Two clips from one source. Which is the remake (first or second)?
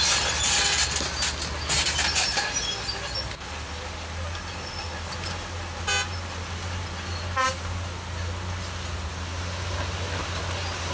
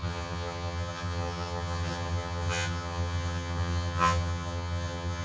second